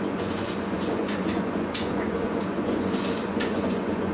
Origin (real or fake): fake